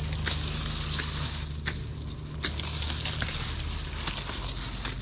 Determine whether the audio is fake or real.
real